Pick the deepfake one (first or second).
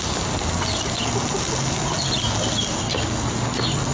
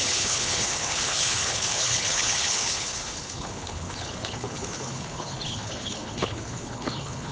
second